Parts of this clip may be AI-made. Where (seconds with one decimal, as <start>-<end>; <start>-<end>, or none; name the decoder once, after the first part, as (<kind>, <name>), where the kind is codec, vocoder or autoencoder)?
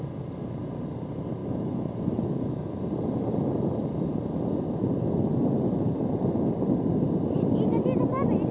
1.4-2.8 (autoencoder, DAC-VAE)